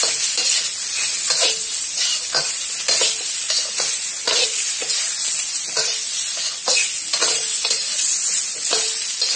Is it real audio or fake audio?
real